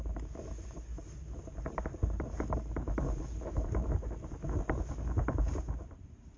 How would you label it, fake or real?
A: real